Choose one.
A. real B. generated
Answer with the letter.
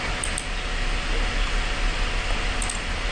A